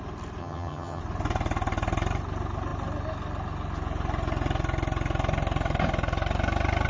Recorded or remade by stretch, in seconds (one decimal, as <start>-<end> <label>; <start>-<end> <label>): 0.0-0.4 recorded; 0.4-1.0 remade; 1.0-6.9 recorded